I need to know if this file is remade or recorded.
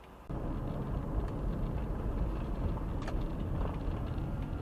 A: recorded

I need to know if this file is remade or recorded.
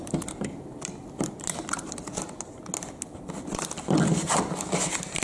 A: recorded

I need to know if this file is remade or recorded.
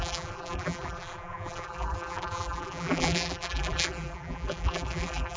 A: remade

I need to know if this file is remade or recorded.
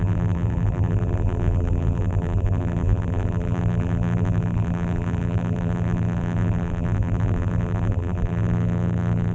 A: remade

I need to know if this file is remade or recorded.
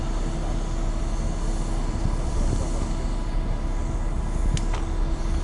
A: recorded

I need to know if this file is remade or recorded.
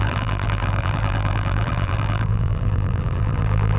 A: remade